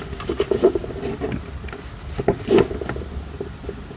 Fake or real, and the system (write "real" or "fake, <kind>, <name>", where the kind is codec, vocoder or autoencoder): real